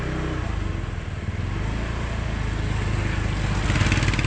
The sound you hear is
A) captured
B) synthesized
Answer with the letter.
A